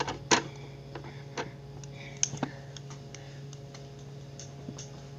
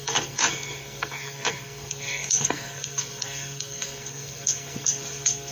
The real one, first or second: first